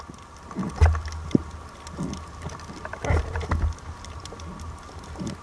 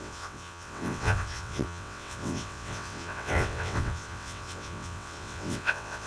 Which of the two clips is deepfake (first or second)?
second